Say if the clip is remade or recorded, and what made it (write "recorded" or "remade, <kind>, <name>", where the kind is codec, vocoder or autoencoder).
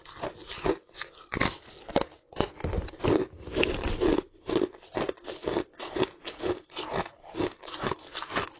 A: recorded